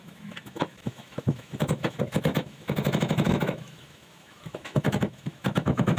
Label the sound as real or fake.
fake